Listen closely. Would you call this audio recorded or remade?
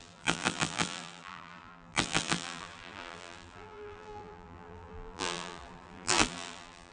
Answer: remade